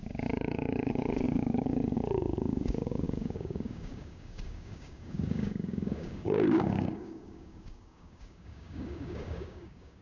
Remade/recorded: remade